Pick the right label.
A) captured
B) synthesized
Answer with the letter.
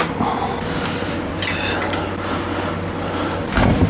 A